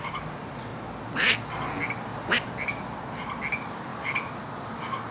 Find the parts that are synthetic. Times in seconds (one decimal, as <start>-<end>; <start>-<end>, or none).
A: 2.1-3.0